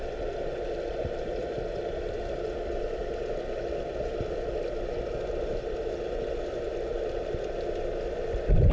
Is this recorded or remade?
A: recorded